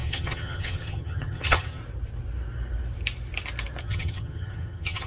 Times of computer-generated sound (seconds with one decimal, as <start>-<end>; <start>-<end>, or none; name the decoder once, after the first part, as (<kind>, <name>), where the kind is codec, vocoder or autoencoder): 0.0-1.8 (vocoder, HiFi-GAN); 3.8-5.1